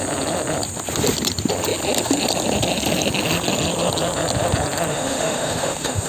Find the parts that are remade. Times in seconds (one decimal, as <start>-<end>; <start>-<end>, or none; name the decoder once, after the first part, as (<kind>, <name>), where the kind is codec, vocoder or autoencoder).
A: 4.9-6.1 (autoencoder, DAC-VAE)